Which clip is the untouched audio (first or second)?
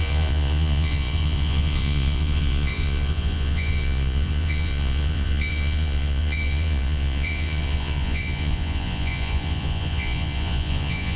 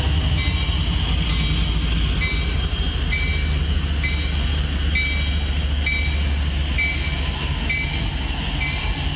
second